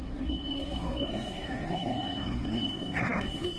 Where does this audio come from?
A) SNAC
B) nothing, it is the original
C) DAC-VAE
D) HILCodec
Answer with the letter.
A